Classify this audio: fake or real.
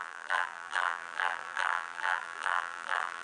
fake